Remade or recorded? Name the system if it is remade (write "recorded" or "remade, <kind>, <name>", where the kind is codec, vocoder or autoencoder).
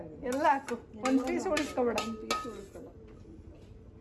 recorded